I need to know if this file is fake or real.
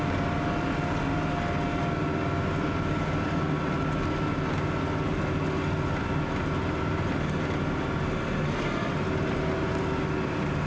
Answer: real